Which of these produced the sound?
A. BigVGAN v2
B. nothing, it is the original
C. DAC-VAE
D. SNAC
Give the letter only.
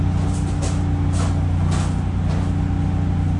B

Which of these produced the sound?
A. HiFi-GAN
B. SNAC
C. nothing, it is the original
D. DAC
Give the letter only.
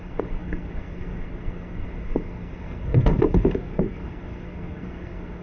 B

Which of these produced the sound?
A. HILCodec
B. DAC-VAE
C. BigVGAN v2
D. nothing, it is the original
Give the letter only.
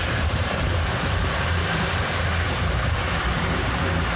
C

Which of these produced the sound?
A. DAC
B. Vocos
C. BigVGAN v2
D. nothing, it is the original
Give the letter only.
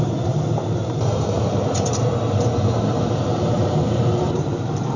C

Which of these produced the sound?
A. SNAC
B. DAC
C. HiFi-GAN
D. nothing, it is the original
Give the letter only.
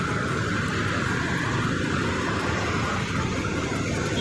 D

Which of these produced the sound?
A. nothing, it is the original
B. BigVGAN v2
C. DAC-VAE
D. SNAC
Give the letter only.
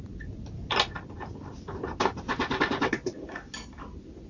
A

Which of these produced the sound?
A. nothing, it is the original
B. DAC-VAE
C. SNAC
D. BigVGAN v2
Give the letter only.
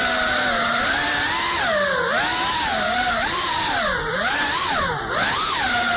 A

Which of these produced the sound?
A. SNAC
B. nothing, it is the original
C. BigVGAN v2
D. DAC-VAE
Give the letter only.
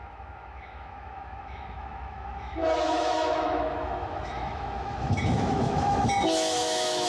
D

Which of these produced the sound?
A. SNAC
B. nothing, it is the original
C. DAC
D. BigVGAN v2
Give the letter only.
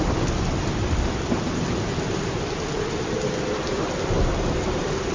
B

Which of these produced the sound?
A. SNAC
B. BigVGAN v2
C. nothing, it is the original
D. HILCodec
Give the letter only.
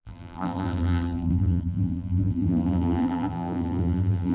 B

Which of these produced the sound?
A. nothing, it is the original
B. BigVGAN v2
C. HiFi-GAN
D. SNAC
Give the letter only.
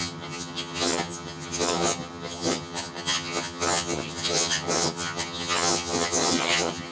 C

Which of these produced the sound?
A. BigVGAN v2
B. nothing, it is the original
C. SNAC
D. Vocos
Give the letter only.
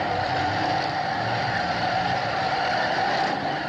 A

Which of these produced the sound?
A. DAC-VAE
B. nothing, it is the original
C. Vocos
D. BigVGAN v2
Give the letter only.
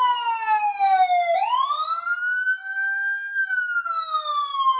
B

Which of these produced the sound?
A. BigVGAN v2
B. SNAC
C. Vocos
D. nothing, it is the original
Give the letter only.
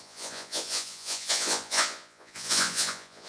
C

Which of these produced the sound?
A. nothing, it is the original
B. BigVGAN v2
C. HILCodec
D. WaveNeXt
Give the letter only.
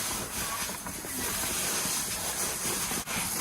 A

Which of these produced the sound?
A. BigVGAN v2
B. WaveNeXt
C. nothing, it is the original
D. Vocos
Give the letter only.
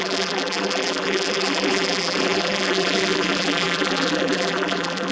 A